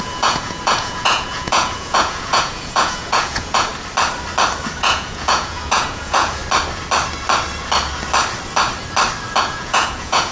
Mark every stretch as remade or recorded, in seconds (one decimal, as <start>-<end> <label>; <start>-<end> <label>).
0.0-3.7 remade; 3.7-4.8 recorded; 4.8-6.4 remade; 6.4-9.4 recorded; 9.4-10.3 remade